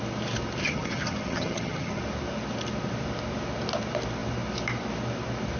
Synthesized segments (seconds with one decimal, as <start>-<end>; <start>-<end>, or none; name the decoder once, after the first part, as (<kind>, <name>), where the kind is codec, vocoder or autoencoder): 0.6-2.0 (vocoder, HiFi-GAN)